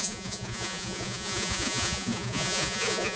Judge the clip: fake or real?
fake